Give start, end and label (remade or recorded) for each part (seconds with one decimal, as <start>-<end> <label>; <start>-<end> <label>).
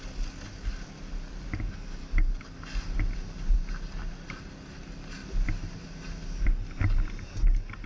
0.0-7.9 recorded